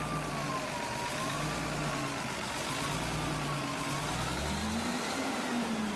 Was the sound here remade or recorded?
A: recorded